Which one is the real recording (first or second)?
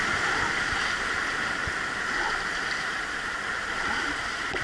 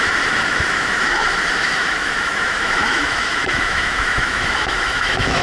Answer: first